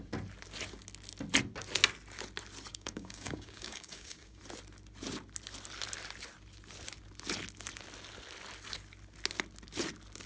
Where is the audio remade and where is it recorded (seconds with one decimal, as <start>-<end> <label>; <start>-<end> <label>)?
0.0-2.7 recorded; 2.7-4.4 remade; 4.4-10.3 recorded